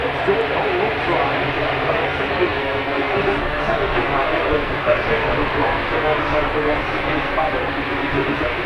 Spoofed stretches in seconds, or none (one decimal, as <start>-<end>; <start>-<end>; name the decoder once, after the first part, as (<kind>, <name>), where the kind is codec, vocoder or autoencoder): 1.9-8.7 (codec, SNAC)